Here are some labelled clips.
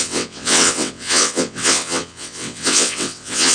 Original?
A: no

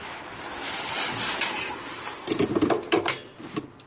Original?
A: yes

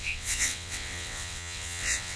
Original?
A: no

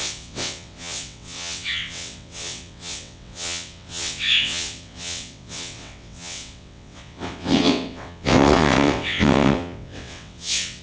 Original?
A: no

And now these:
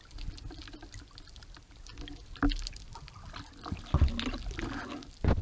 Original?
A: yes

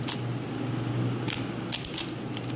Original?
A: yes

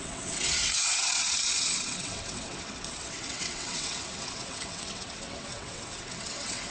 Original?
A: no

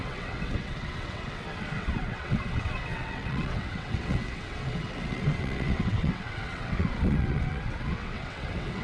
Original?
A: no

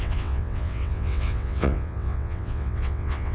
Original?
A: no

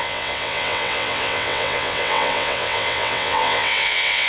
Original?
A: no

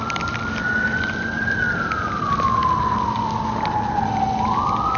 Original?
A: yes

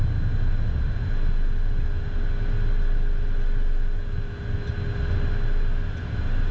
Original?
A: yes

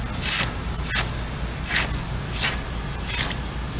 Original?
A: yes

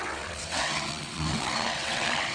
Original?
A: no